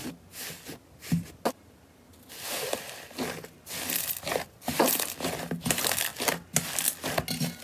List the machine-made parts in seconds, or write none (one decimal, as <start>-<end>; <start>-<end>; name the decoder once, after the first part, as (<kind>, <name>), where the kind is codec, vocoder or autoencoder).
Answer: none